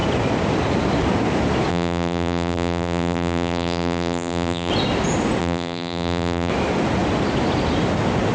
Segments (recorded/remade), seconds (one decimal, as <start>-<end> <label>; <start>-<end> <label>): 0.0-1.7 recorded; 1.7-4.7 remade; 4.7-5.4 recorded; 5.4-6.5 remade; 6.5-8.3 recorded